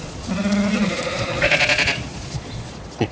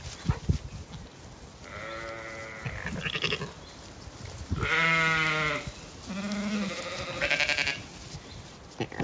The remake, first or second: first